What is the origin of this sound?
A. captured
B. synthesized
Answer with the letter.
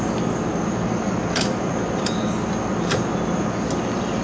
A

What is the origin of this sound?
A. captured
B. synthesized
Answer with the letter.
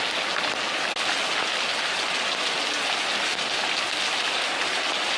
A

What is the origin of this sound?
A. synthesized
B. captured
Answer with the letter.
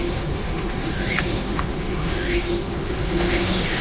A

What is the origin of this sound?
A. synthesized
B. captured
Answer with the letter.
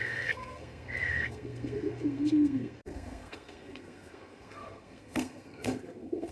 A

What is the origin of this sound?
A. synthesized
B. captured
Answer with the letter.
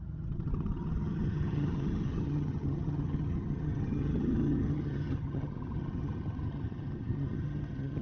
A